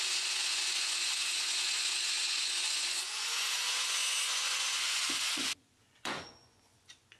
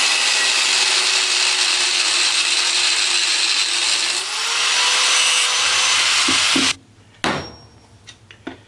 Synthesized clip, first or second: first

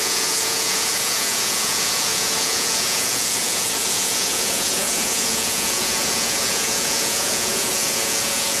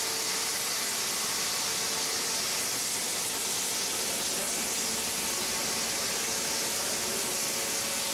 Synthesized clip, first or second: first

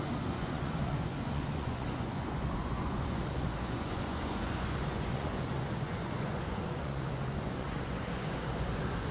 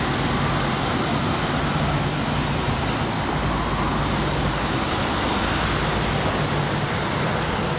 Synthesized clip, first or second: first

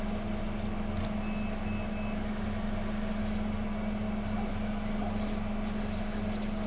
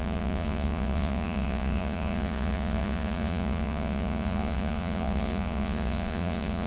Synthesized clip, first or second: second